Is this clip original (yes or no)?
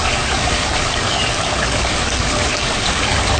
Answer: no